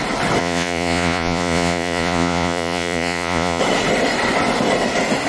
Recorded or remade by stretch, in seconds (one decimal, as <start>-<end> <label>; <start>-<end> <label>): 0.0-0.4 recorded; 0.4-3.6 remade; 3.6-5.3 recorded